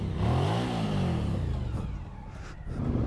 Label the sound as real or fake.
real